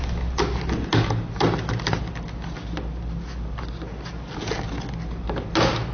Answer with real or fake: real